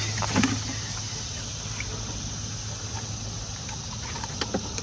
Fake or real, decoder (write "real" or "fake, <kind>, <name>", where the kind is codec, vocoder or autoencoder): real